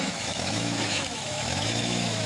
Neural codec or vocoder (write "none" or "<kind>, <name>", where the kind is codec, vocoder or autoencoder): autoencoder, DAC-VAE